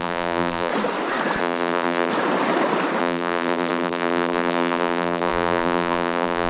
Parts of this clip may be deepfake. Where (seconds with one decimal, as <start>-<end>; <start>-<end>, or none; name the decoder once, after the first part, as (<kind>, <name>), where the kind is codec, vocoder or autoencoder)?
0.0-0.7 (vocoder, BigVGAN v2); 1.4-2.1; 3.0-6.5